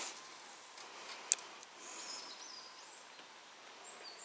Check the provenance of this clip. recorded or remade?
recorded